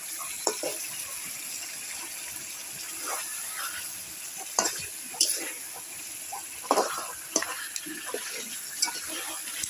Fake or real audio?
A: real